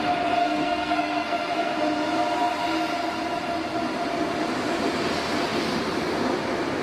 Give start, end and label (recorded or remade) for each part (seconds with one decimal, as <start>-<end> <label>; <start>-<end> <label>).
0.0-0.4 recorded; 0.4-1.8 remade; 1.8-6.8 recorded